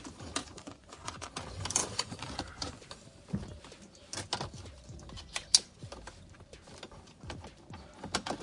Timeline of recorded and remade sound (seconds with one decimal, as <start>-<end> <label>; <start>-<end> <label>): 0.0-0.4 recorded; 0.4-1.3 remade; 1.3-1.8 recorded; 1.8-2.9 remade; 2.9-8.4 recorded